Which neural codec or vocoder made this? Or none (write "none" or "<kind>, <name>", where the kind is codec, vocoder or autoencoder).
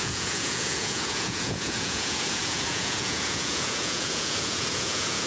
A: vocoder, Vocos